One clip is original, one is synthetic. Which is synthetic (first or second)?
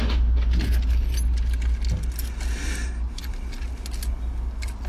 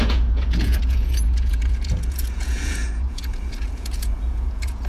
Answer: second